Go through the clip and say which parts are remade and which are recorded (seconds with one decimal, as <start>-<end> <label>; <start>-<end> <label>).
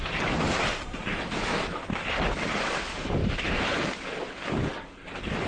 0.0-1.1 recorded; 1.1-1.8 remade; 1.8-3.2 recorded; 3.2-3.8 remade; 3.8-5.5 recorded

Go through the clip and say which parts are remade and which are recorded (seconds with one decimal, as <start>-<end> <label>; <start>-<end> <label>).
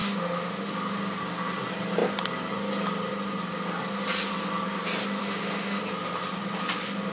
0.0-0.7 remade; 0.7-5.2 recorded; 5.2-5.8 remade; 5.8-7.1 recorded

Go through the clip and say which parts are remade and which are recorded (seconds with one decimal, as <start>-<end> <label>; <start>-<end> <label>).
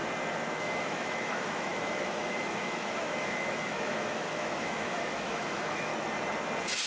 0.0-0.6 recorded; 0.6-5.9 remade; 5.9-6.9 recorded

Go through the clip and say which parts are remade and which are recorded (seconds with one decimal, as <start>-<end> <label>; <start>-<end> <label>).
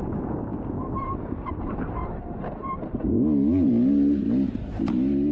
0.0-5.3 recorded